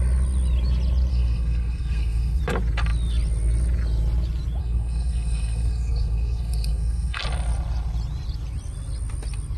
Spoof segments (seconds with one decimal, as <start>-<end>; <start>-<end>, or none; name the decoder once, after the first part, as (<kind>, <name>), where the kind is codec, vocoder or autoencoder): 1.1-2.4 (codec, SNAC); 4.6-7.2